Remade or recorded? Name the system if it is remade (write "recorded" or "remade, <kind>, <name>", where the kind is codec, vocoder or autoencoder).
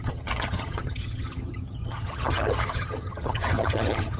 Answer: remade, vocoder, HiFi-GAN